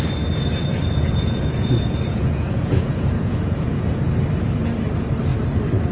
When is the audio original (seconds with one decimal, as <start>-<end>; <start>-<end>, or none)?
0.0-0.7; 4.2-5.9